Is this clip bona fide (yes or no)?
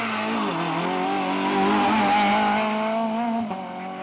yes